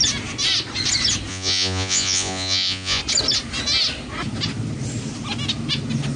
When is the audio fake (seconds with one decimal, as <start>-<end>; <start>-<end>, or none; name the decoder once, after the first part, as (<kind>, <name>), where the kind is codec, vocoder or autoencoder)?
1.3-3.0 (vocoder, Vocos)